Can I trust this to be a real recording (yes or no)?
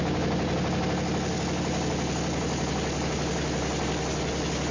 yes